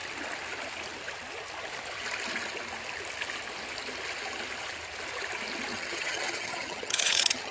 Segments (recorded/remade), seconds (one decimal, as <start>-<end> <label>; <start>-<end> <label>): 0.0-5.7 recorded; 5.7-7.5 remade